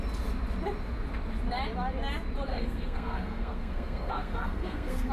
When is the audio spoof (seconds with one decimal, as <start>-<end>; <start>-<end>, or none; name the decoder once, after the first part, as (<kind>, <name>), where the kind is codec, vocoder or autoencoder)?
2.5-5.1 (codec, SNAC)